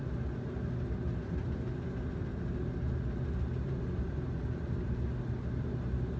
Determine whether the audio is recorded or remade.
recorded